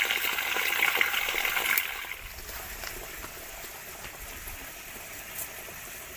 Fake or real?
real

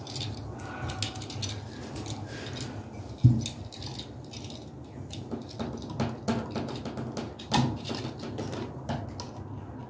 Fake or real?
real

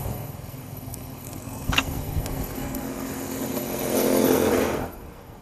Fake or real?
fake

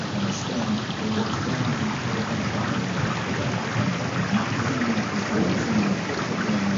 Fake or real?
real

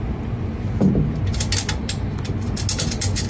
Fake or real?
real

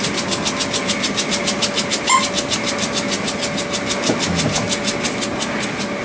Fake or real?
real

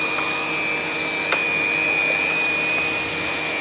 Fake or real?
real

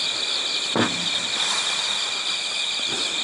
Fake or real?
real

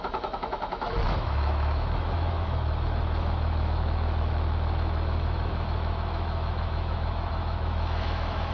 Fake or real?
fake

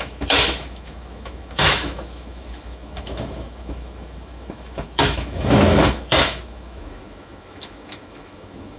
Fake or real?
fake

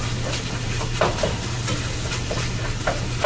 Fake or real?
real